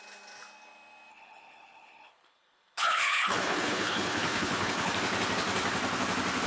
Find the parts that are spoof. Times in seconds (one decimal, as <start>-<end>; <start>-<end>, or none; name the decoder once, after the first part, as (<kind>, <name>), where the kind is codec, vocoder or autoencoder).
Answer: 1.1-4.9 (codec, HILCodec)